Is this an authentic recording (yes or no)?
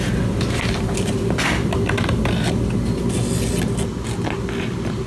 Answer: yes